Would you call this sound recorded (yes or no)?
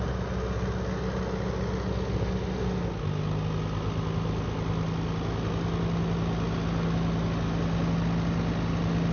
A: yes